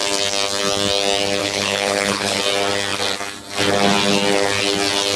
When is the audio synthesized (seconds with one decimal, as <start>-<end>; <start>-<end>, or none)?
1.4-2.4